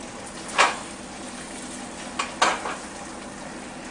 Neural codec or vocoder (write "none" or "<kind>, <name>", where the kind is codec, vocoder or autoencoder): none